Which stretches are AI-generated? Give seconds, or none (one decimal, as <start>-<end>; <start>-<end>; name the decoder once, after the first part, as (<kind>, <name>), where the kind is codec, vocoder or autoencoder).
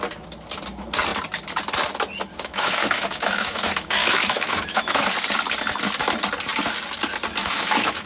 2.3-5.0 (autoencoder, DAC-VAE); 7.4-8.1